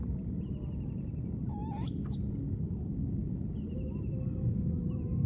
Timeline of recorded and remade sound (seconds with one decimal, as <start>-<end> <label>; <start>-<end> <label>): 0.0-3.2 recorded; 3.2-4.7 remade; 4.7-5.3 recorded